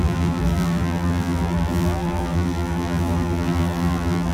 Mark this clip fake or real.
fake